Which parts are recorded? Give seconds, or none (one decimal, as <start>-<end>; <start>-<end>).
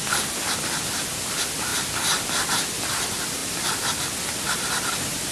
0.0-5.3